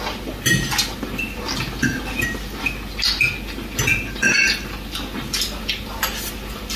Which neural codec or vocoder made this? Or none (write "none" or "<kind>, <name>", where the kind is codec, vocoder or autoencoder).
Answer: none